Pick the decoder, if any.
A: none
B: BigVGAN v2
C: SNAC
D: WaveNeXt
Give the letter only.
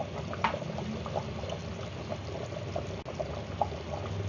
A